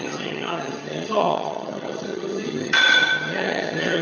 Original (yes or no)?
no